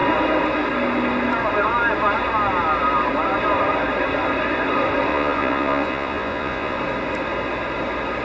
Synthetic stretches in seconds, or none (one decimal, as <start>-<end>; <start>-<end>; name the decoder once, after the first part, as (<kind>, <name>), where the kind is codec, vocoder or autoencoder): 5.1-6.8 (vocoder, Vocos)